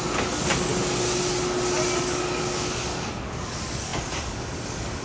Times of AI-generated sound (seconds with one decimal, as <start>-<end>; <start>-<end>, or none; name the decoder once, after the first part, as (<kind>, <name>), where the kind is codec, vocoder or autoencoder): 0.0-0.7 (codec, DAC); 2.0-5.0